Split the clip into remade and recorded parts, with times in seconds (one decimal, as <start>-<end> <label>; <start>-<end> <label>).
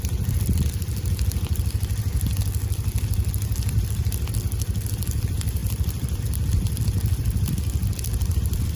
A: 0.0-5.6 recorded; 5.6-6.2 remade; 6.2-8.8 recorded